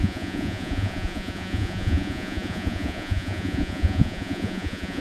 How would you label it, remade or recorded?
remade